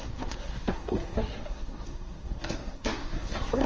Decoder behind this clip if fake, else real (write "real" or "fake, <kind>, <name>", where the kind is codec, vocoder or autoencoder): fake, codec, SNAC